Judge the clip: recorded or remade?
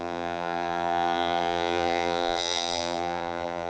remade